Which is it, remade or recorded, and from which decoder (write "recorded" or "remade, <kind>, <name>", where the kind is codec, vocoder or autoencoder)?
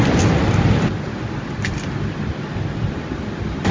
remade, vocoder, BigVGAN v2